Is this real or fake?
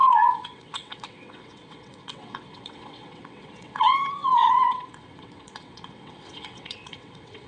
fake